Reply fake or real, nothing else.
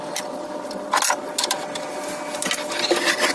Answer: real